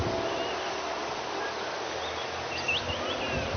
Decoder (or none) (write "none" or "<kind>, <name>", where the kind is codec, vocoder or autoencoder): none